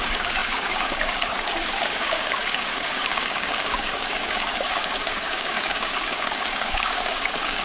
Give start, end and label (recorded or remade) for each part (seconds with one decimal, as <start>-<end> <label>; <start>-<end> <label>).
0.0-7.6 remade